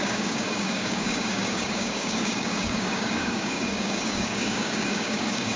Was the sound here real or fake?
fake